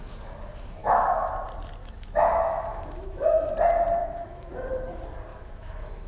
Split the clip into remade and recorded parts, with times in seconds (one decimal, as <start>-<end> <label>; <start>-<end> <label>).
0.0-0.8 recorded; 0.8-1.3 remade; 1.3-1.8 recorded; 1.8-3.5 remade; 3.5-4.0 recorded; 4.0-4.5 remade; 4.5-5.3 recorded; 5.3-6.1 remade